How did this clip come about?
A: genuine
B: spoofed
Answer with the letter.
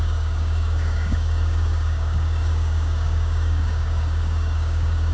B